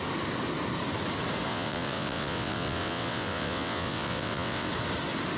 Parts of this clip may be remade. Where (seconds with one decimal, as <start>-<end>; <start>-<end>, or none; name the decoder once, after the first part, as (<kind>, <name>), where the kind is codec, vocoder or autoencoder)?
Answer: 1.5-4.7 (vocoder, WaveNeXt)